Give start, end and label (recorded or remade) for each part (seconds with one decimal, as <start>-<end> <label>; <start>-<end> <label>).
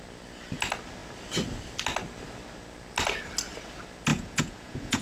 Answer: 0.0-4.1 recorded; 4.1-5.0 remade